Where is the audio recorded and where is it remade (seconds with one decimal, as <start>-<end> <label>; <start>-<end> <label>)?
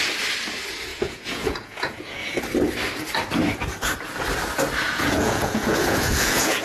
0.0-0.9 recorded; 0.9-2.4 remade; 2.4-4.8 recorded; 4.8-6.6 remade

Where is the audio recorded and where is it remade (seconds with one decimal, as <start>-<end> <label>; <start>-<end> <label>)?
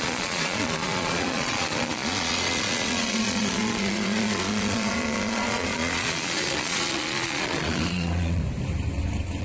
0.0-8.4 remade; 8.4-9.4 recorded